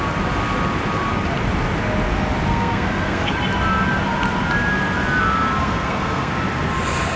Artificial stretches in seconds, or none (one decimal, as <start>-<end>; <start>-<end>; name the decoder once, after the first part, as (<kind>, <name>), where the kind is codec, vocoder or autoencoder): 2.5-3.3 (codec, SNAC); 5.6-6.3